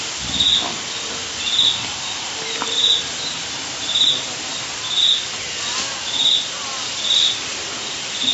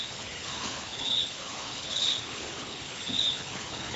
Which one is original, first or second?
first